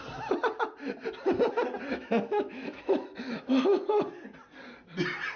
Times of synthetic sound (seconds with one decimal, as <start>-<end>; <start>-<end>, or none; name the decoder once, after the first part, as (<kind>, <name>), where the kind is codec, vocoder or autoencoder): 1.9-3.8 (autoencoder, DAC-VAE)